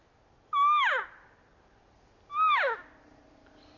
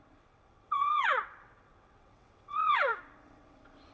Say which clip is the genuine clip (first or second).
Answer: first